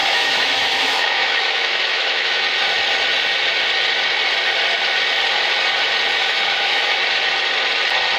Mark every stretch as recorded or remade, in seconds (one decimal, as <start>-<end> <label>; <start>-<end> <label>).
0.0-2.4 remade; 2.4-6.2 recorded; 6.2-7.0 remade; 7.0-8.2 recorded